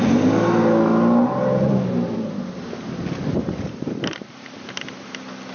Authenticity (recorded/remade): recorded